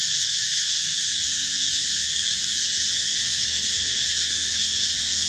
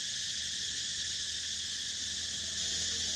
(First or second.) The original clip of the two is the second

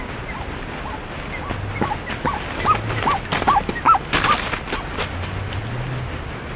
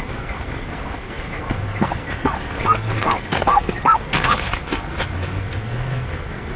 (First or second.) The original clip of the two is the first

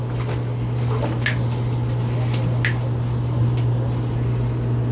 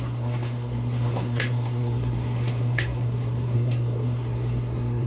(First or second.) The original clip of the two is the first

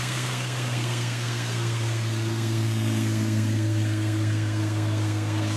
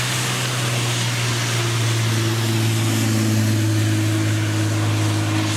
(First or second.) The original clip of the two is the second